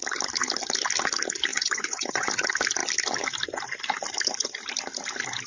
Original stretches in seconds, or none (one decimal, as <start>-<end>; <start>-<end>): 0.0-1.5; 2.3-5.5